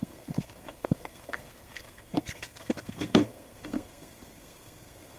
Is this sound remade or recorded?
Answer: remade